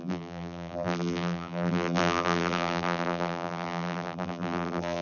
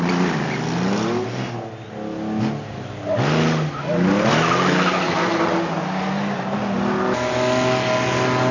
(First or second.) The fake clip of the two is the first